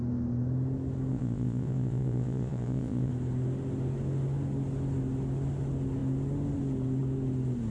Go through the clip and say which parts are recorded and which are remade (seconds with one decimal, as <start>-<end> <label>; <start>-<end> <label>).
0.0-1.1 recorded; 1.1-3.1 remade; 3.1-7.7 recorded